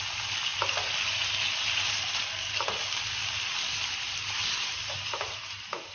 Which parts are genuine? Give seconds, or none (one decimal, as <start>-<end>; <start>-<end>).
0.0-5.9